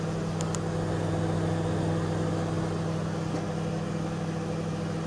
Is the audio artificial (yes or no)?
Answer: no